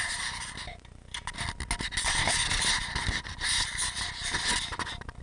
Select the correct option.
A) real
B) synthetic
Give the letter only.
A